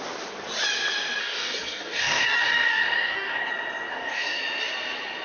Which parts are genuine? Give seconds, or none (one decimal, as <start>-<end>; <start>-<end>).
0.0-1.2; 3.5-3.9; 4.4-5.2